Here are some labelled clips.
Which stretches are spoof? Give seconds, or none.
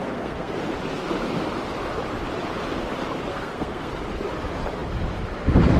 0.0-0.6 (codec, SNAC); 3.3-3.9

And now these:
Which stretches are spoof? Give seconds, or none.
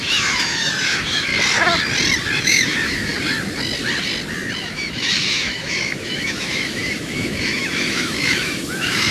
0.0-1.3 (autoencoder, DAC-VAE); 2.4-3.1; 4.6-9.1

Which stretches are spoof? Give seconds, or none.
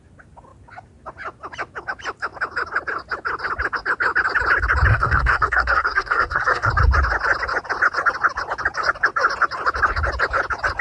4.9-6.7 (codec, SNAC)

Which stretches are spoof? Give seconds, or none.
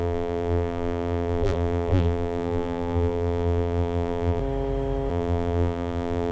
0.0-4.4 (vocoder, BigVGAN v2); 5.1-6.3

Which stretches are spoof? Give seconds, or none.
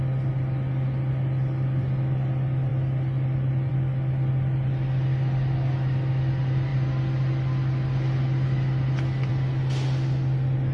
none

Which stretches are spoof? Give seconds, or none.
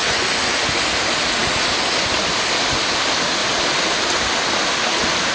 0.0-0.6 (vocoder, Vocos)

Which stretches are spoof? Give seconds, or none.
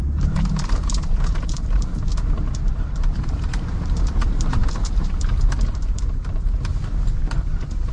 0.0-2.1 (vocoder, BigVGAN v2); 2.7-6.7; 7.2-7.9